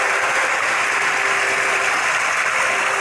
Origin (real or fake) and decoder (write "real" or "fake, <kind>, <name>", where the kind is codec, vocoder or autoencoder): real